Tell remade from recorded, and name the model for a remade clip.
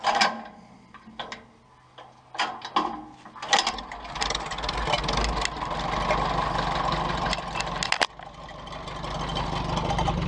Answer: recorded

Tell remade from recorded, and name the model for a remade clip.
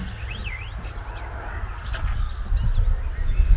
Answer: recorded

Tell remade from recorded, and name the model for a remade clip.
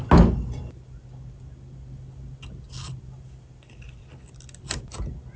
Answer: recorded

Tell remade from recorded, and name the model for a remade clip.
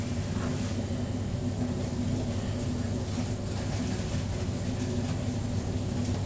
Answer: recorded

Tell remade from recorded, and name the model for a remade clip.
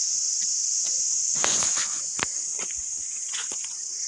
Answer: remade, vocoder, Vocos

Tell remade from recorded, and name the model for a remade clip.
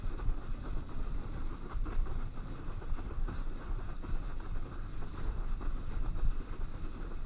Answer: recorded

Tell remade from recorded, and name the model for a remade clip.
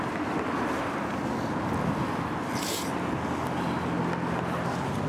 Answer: recorded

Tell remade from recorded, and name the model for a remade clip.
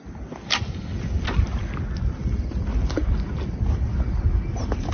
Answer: recorded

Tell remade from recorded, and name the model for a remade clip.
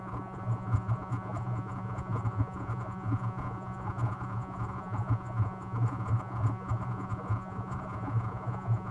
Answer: remade, vocoder, Vocos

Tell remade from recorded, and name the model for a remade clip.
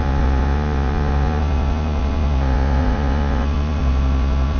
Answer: remade, vocoder, Vocos